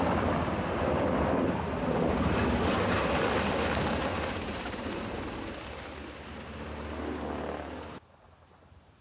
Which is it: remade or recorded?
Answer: recorded